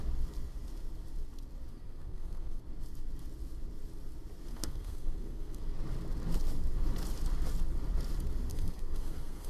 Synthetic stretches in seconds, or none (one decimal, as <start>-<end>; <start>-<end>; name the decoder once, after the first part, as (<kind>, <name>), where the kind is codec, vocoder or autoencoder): 1.7-2.6 (codec, SNAC); 4.5-5.6; 8.5-9.5